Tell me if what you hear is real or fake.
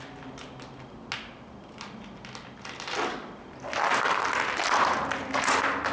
real